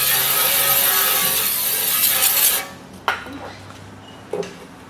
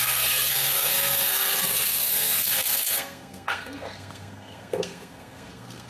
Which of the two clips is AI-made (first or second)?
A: second